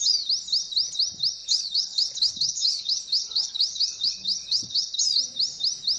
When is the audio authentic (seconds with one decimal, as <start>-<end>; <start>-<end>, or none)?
0.0-1.4; 5.0-6.0